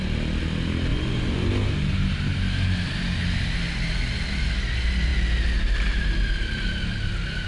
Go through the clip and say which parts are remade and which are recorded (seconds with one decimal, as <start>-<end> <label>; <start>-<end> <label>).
0.0-0.9 recorded; 0.9-1.5 remade; 1.5-7.5 recorded